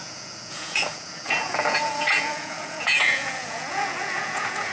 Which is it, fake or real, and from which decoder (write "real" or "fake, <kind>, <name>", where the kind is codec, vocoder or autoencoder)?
fake, vocoder, Vocos